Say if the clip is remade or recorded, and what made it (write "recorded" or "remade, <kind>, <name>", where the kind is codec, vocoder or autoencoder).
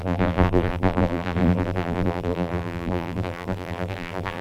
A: remade, vocoder, BigVGAN v2